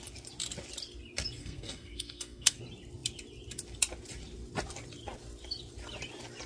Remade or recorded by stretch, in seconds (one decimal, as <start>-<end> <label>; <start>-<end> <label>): 0.0-1.4 recorded; 1.4-2.6 remade; 2.6-6.5 recorded